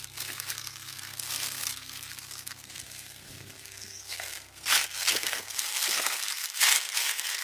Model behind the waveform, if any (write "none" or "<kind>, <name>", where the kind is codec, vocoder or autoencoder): codec, SNAC